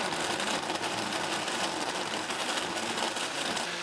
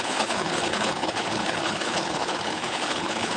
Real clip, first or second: first